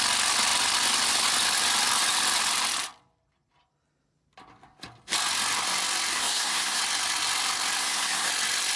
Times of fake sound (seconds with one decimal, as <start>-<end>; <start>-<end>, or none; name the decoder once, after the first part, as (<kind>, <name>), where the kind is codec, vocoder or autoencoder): 6.1-6.8 (codec, SNAC); 7.8-8.3